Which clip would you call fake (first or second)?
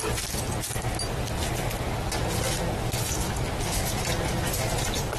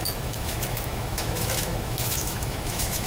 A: second